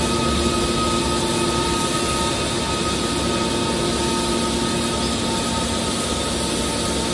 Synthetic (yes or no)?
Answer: no